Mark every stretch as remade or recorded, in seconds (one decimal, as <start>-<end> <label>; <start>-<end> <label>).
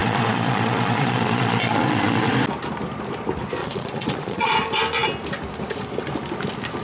0.0-2.3 remade; 2.3-3.6 recorded; 3.6-4.5 remade; 4.5-6.8 recorded